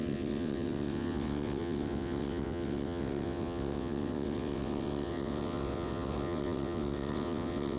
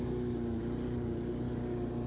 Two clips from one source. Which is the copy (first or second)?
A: first